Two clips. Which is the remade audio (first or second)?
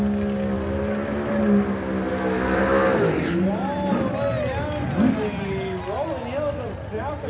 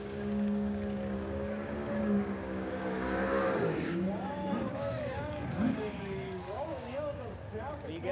second